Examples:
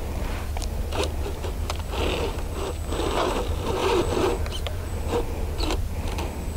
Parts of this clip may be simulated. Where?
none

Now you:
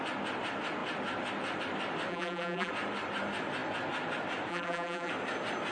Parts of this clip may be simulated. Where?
2.1-2.7 (vocoder, BigVGAN v2); 4.5-5.1

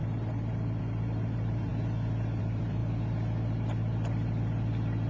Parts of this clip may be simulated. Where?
0.8-1.7 (vocoder, BigVGAN v2); 2.4-2.8

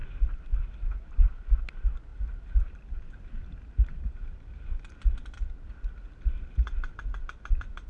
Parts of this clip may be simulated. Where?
2.1-2.8 (vocoder, BigVGAN v2); 3.4-4.2

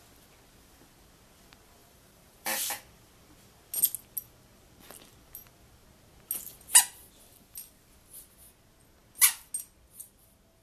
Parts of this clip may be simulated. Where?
1.8-2.8 (vocoder, BigVGAN v2)